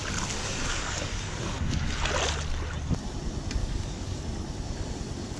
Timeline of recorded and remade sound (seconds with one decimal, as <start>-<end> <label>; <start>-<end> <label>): 0.0-0.4 recorded; 0.4-2.1 remade; 2.1-3.6 recorded; 3.6-4.2 remade; 4.2-5.4 recorded